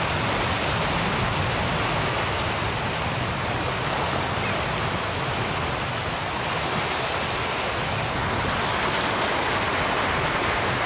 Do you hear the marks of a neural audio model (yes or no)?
no